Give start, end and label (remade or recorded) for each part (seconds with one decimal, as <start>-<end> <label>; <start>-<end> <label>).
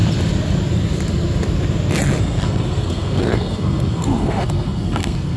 0.0-2.2 recorded; 2.2-5.4 remade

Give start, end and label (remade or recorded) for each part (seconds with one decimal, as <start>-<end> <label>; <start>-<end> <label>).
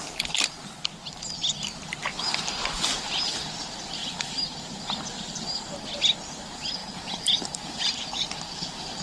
0.0-4.0 recorded; 4.0-4.8 remade; 4.8-6.8 recorded; 6.8-8.3 remade; 8.3-9.0 recorded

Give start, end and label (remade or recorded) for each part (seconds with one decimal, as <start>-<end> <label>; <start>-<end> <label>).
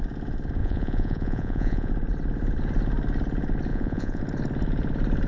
0.0-0.6 recorded; 0.6-1.9 remade; 1.9-3.7 recorded; 3.7-4.2 remade; 4.2-5.3 recorded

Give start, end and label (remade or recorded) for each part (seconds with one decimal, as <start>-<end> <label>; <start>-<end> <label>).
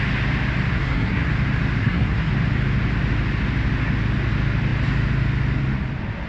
0.0-0.7 recorded; 0.7-1.3 remade; 1.3-1.8 recorded; 1.8-2.3 remade; 2.3-6.3 recorded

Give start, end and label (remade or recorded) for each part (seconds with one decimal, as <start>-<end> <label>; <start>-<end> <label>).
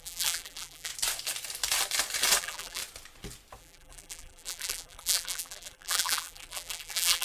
0.0-0.9 remade; 0.9-2.4 recorded; 2.4-2.8 remade; 2.8-3.6 recorded; 3.6-7.2 remade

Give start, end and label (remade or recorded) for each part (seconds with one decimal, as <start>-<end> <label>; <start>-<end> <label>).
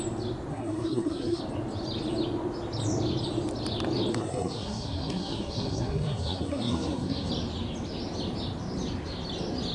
0.0-0.5 recorded; 0.5-1.4 remade; 1.4-4.1 recorded; 4.1-7.3 remade; 7.3-9.7 recorded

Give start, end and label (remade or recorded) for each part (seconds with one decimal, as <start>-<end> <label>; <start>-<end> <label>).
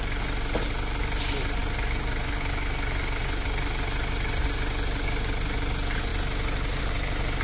0.0-7.4 recorded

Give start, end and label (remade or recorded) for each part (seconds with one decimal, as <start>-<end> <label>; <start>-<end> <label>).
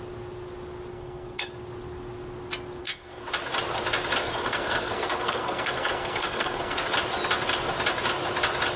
0.0-0.9 recorded; 0.9-1.5 remade; 1.5-2.8 recorded; 2.8-3.3 remade; 3.3-4.2 recorded; 4.2-6.8 remade; 6.8-8.8 recorded